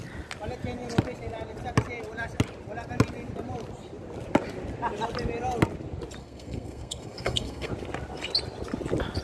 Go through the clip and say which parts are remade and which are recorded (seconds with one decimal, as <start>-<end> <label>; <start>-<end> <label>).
0.0-6.2 recorded; 6.2-7.7 remade; 7.7-9.2 recorded